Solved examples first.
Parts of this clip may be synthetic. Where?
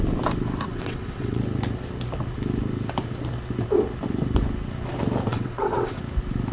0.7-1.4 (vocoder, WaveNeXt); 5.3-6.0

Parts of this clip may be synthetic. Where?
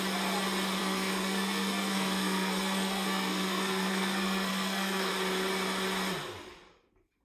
0.8-5.1 (codec, SNAC)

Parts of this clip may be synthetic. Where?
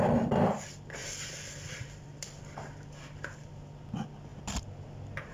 1.0-3.5 (vocoder, BigVGAN v2)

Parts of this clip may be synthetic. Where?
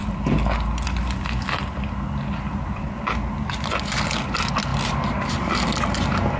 4.7-6.0 (vocoder, BigVGAN v2)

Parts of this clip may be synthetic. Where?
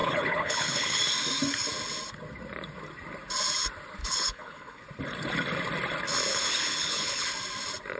0.0-1.0 (codec, HILCodec); 4.0-4.8; 6.3-7.3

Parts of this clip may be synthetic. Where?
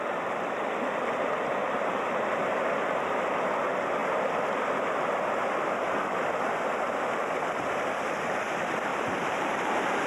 1.6-2.1 (vocoder, BigVGAN v2); 8.9-10.1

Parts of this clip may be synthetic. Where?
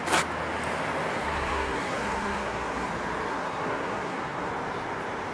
1.1-2.9 (codec, SNAC); 3.3-4.5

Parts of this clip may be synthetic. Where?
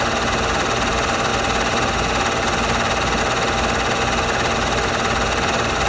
none